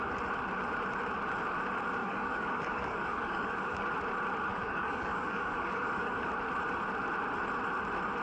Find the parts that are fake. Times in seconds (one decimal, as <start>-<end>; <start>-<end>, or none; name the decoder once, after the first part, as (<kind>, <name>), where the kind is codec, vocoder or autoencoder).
2.0-3.8 (codec, DAC); 4.5-6.3